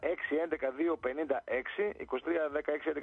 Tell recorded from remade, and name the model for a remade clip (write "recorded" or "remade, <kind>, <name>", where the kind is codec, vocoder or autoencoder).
recorded